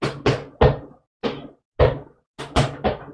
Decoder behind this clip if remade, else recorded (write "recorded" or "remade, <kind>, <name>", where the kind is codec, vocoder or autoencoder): recorded